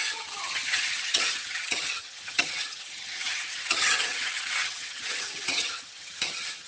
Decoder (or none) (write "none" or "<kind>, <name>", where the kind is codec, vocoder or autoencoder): vocoder, HiFi-GAN